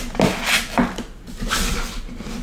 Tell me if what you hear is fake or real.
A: real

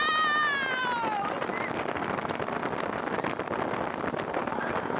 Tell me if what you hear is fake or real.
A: real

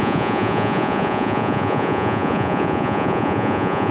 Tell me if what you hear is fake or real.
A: fake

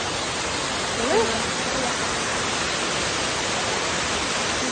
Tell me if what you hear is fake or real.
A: real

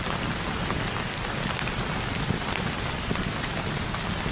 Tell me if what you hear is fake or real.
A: real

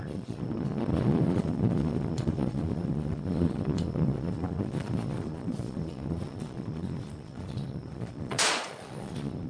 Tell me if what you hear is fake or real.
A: fake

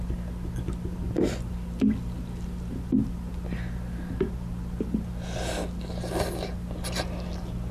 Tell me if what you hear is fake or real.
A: real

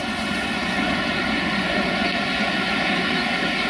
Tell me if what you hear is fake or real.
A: fake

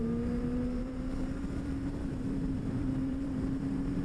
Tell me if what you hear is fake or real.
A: fake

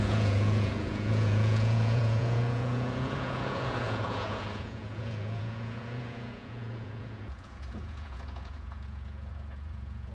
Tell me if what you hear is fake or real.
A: fake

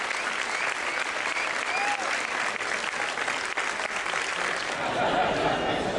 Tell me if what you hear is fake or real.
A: real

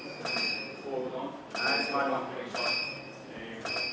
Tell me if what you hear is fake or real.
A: real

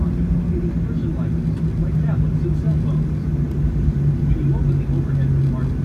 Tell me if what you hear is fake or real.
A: real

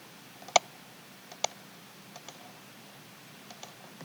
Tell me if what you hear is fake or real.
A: real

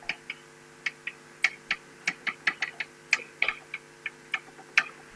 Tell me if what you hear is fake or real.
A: real